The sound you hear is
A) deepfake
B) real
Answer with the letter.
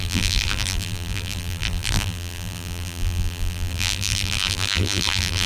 A